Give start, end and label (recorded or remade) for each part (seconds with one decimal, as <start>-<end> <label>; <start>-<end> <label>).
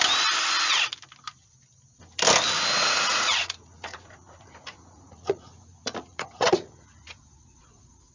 0.0-2.8 recorded; 2.8-8.1 remade